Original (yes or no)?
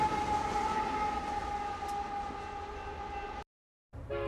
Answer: yes